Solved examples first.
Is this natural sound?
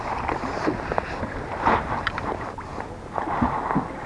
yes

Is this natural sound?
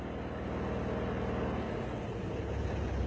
yes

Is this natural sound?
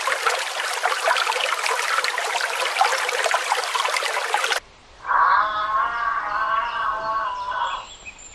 yes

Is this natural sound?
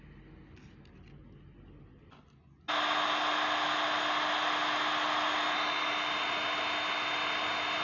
yes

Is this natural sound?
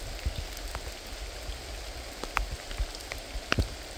yes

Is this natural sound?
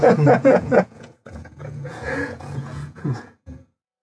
no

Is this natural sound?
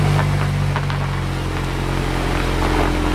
yes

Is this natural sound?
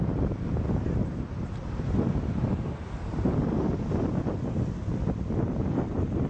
yes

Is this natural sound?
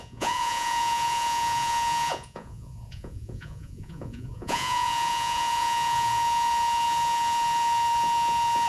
no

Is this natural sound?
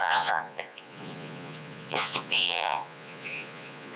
no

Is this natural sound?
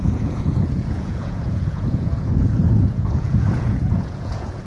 no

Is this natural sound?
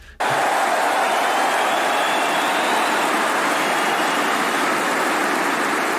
yes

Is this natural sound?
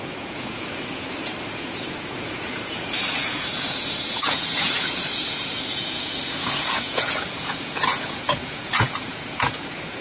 no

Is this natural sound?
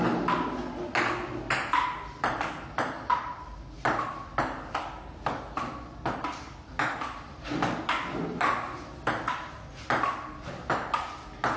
yes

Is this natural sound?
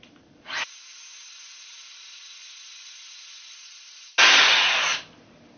yes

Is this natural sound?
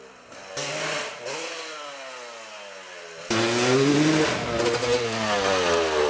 yes